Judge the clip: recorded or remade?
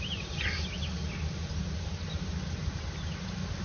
recorded